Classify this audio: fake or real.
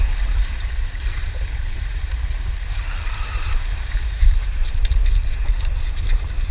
fake